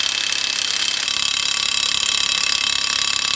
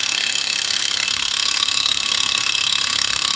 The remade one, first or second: second